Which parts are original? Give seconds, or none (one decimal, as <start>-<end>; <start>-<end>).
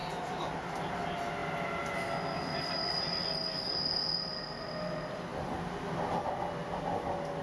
0.5-7.4